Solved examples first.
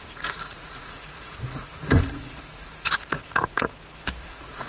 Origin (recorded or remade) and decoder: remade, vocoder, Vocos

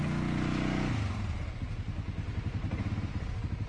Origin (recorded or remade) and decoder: recorded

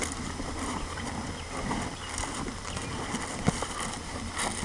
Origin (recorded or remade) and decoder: recorded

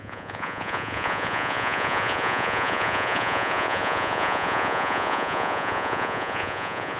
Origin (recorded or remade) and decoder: remade, vocoder, Vocos